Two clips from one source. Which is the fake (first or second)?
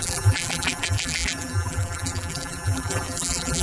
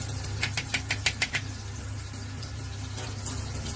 first